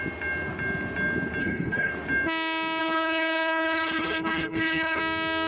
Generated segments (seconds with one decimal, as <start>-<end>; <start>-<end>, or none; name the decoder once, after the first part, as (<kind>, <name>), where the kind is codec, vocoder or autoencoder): 1.4-1.9 (codec, HILCodec); 2.8-5.0